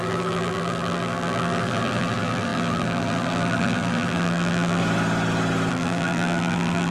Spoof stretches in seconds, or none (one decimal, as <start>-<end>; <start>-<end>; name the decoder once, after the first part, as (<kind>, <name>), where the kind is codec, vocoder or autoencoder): 0.0-4.8 (vocoder, BigVGAN v2); 5.7-6.9